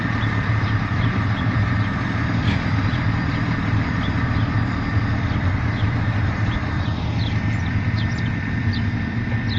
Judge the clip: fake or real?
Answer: fake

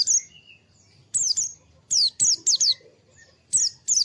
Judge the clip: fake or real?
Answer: real